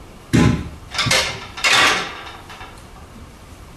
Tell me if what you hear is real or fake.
fake